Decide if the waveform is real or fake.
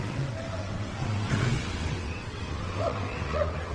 fake